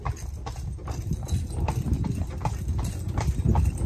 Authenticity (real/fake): real